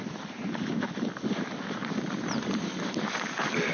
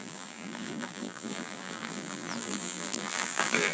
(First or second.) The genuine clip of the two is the first